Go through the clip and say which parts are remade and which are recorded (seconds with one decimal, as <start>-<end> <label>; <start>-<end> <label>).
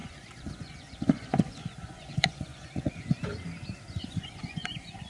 0.0-3.3 remade; 3.3-4.0 recorded; 4.0-5.1 remade